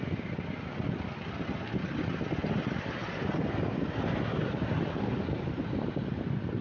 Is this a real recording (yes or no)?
yes